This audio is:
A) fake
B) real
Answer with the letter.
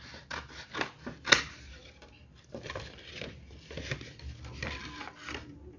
B